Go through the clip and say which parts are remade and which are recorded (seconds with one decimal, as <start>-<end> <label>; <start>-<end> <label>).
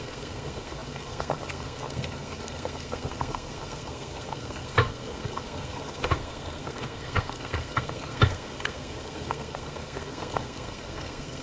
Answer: 0.0-11.4 remade